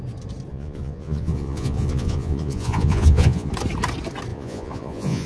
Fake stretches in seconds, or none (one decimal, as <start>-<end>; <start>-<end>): 0.5-3.5; 4.3-5.3